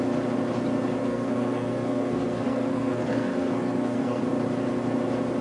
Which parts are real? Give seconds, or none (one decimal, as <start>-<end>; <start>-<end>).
0.0-1.0; 4.2-5.4